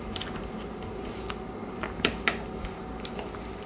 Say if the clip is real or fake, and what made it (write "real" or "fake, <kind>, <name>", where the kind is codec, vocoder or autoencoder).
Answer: real